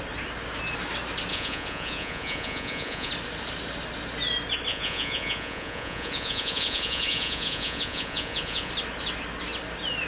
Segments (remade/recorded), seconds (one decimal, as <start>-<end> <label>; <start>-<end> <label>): 0.0-1.3 recorded; 1.3-3.1 remade; 3.1-4.7 recorded; 4.7-8.7 remade; 8.7-10.1 recorded